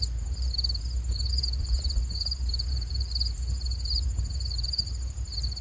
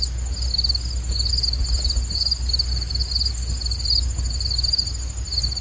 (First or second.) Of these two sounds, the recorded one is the second